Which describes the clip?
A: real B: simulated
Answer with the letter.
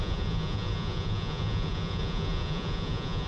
B